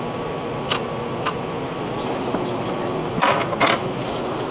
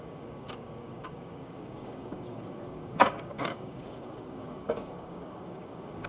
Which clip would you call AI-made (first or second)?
second